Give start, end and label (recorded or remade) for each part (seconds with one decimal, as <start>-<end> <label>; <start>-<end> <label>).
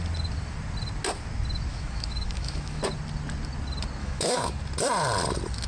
0.0-1.7 recorded; 1.7-2.8 remade; 2.8-4.0 recorded; 4.0-4.5 remade; 4.5-5.7 recorded